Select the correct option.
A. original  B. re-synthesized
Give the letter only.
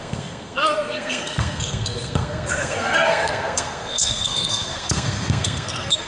B